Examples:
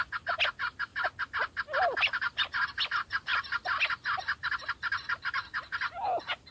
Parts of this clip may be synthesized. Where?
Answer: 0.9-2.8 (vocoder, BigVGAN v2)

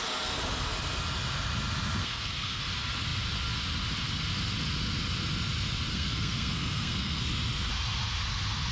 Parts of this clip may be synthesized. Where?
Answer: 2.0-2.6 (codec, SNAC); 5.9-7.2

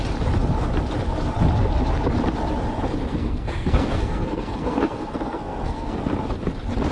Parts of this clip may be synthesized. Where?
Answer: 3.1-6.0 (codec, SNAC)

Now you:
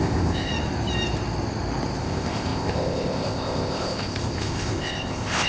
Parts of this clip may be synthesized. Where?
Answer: 0.0-0.5 (codec, ZipCodec); 2.0-5.5

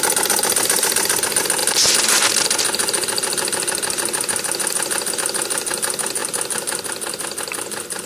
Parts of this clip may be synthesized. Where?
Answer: none

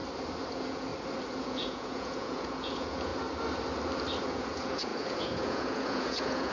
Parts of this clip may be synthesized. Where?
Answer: 0.5-0.9 (vocoder, Vocos); 1.4-3.1; 4.2-6.5